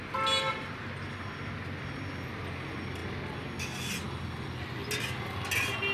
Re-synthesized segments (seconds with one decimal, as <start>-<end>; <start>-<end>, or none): none